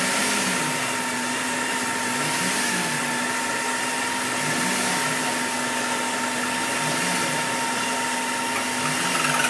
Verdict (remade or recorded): recorded